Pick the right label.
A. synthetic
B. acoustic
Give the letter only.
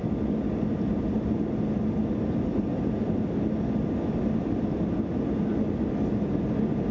B